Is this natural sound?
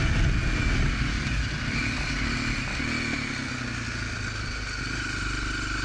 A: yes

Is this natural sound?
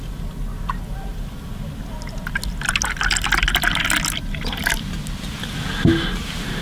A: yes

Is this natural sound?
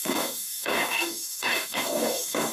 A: no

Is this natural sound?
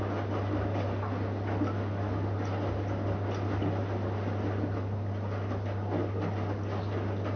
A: yes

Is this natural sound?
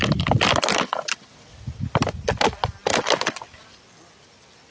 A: yes